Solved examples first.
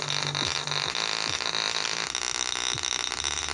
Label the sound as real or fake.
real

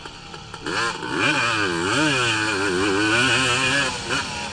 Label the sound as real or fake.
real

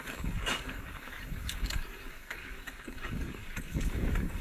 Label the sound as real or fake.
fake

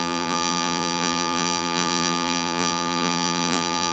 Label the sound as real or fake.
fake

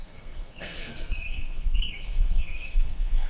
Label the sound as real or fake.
fake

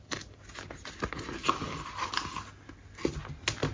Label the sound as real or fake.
real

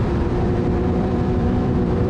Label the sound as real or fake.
fake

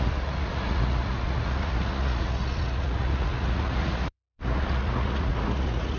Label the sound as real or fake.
fake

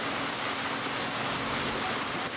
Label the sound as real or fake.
real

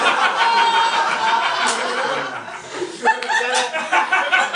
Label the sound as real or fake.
real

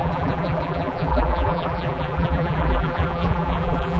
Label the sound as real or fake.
fake